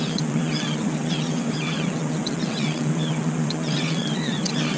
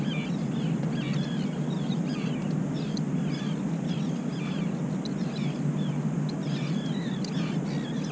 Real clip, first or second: second